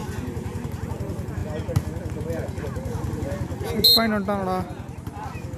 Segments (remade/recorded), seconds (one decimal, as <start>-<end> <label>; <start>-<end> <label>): 0.0-5.6 recorded